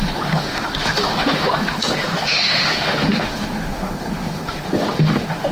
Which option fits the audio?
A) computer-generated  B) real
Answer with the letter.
A